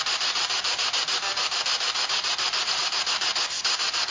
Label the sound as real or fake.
real